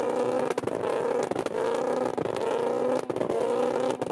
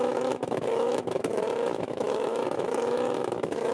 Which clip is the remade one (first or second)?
second